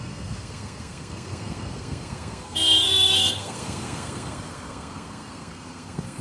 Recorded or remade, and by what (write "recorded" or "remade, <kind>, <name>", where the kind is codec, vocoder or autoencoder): remade, codec, SNAC